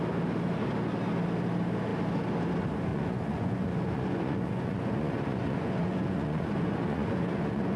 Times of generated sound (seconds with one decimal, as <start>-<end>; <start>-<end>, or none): 2.9-7.8